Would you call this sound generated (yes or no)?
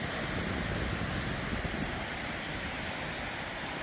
no